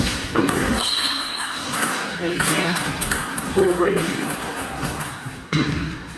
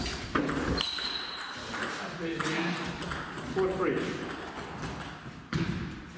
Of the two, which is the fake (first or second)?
first